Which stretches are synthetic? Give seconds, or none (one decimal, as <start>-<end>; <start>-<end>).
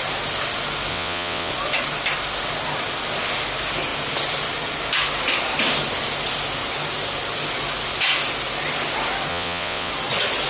0.9-1.5; 9.3-9.9